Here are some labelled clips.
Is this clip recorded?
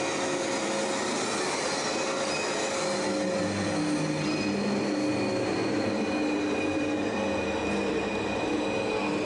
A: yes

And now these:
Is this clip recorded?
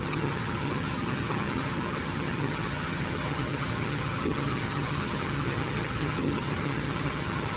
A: no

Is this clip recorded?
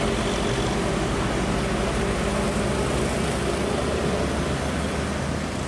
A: yes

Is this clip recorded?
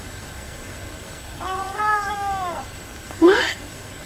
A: no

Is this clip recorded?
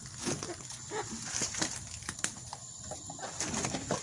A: yes